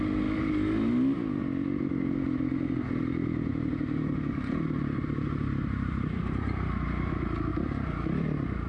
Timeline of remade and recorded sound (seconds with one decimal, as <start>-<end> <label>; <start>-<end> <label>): 0.0-3.5 recorded; 3.5-7.1 remade; 7.1-7.5 recorded; 7.5-8.7 remade